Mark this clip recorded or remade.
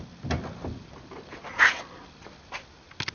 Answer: recorded